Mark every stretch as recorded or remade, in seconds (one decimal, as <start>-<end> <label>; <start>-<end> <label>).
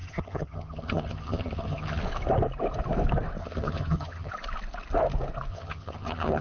0.0-2.0 remade; 2.0-3.4 recorded; 3.4-4.3 remade; 4.3-5.5 recorded; 5.5-6.4 remade